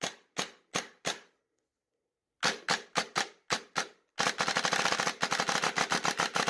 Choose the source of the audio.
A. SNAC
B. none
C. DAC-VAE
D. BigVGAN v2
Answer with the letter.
B